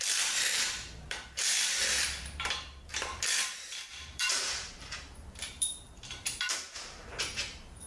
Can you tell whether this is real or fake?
fake